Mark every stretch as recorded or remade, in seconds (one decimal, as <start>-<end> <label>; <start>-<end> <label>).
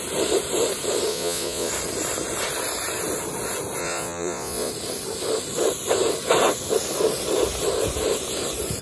0.0-1.1 recorded; 1.1-1.7 remade; 1.7-3.8 recorded; 3.8-4.7 remade; 4.7-8.8 recorded